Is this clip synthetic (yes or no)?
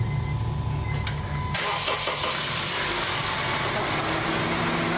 no